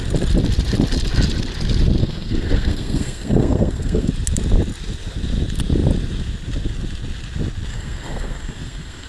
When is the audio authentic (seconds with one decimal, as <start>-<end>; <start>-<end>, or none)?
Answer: 0.0-2.0; 4.1-7.7